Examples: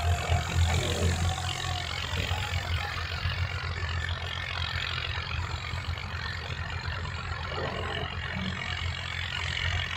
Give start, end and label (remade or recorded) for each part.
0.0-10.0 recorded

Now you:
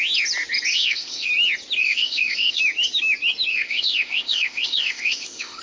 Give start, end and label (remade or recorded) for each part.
0.0-0.7 recorded; 0.7-1.3 remade; 1.3-1.8 recorded; 1.8-2.6 remade; 2.6-3.5 recorded; 3.5-5.6 remade

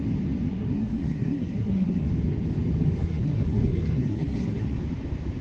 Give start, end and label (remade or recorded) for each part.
0.0-0.5 recorded; 0.5-2.1 remade; 2.1-3.0 recorded; 3.0-4.8 remade; 4.8-5.4 recorded

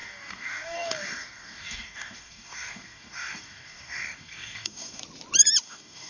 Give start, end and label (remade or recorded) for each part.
0.0-5.0 remade; 5.0-5.6 recorded; 5.6-6.1 remade

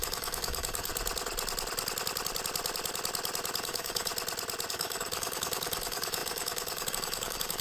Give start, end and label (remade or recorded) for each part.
0.0-0.9 remade; 0.9-3.6 recorded; 3.6-4.1 remade; 4.1-4.7 recorded; 4.7-7.6 remade